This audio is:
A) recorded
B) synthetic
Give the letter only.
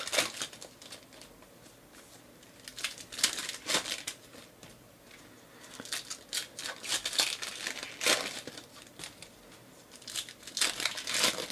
A